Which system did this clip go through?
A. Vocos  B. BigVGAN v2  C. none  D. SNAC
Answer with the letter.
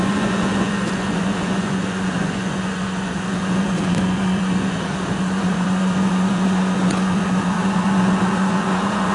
A